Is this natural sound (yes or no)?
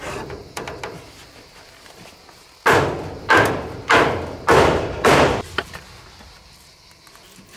yes